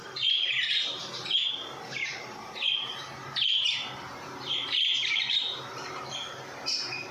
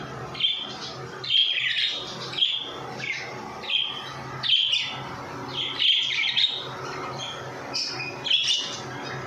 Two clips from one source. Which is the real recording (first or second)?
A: second